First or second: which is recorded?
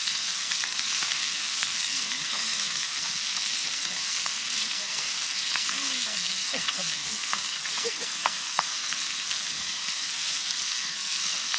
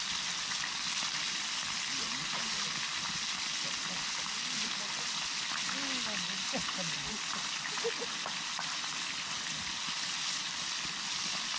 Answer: second